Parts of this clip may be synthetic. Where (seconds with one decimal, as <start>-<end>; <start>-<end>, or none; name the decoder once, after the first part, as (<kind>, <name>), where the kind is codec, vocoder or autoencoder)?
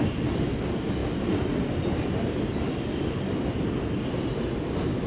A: none